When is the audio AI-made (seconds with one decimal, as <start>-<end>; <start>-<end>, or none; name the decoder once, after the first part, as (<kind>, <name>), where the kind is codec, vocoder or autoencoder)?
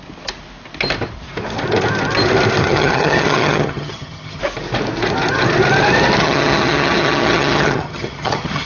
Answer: 2.6-4.4 (vocoder, HiFi-GAN); 6.2-8.7